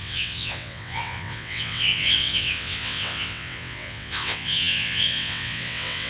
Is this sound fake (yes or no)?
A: yes